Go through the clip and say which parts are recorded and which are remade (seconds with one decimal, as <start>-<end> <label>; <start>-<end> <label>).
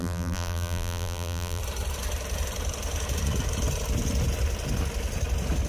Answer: 0.0-1.6 remade; 1.6-5.7 recorded